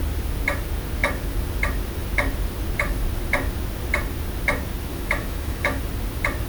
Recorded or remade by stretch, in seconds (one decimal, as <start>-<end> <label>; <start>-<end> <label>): 0.0-4.9 recorded; 4.9-5.8 remade; 5.8-6.5 recorded

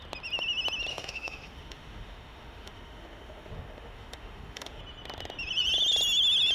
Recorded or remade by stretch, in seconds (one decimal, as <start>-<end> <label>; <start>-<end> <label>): 0.0-0.9 recorded; 0.9-4.8 remade; 4.8-6.5 recorded